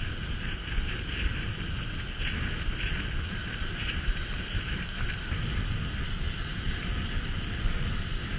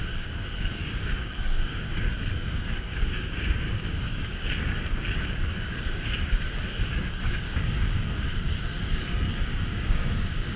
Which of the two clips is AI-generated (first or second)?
second